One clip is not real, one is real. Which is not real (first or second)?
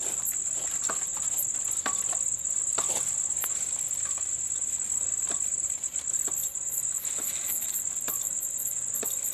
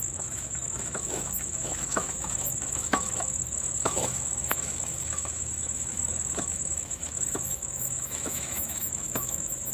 second